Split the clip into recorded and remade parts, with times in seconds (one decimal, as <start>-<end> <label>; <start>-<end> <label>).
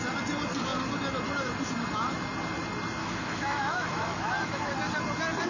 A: 0.0-3.0 recorded; 3.0-4.7 remade; 4.7-5.5 recorded